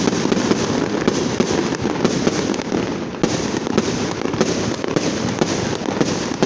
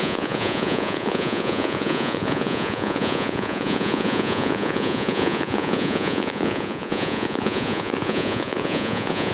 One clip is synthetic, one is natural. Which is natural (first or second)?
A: first